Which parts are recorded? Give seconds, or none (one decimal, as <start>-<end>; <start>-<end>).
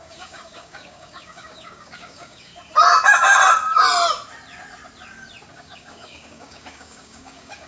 2.5-5.5